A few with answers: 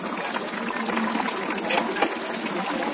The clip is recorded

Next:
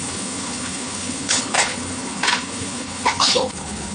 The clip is remade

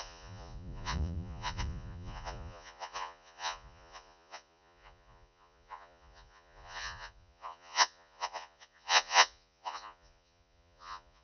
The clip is remade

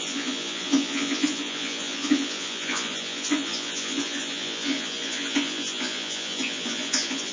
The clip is remade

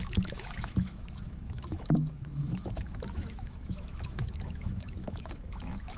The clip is remade